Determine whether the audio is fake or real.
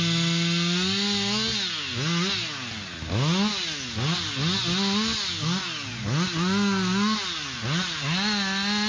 real